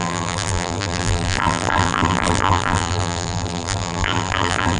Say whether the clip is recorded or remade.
remade